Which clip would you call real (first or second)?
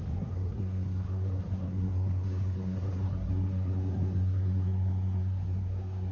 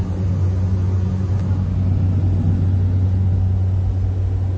second